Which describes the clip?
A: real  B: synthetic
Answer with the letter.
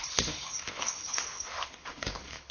B